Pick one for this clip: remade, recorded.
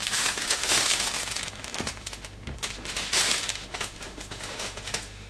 remade